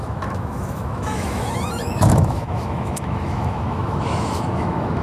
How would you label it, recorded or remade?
remade